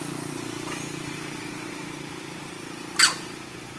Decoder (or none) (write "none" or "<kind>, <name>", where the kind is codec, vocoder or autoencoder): none